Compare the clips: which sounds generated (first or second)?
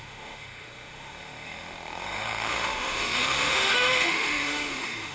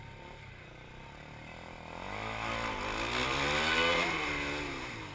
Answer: first